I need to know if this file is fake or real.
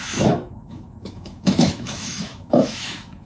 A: fake